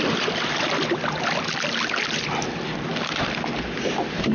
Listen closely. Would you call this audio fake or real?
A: real